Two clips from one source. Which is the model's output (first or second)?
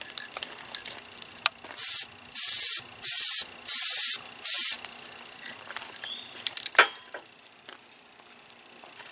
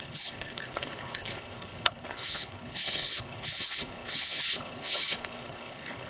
second